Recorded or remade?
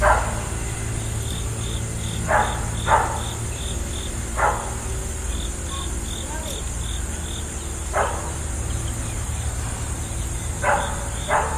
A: recorded